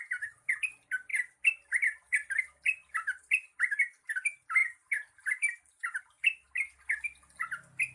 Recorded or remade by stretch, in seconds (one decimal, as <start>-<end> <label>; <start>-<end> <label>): 0.0-7.9 recorded